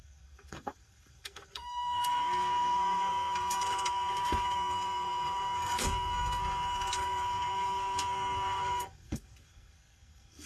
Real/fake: fake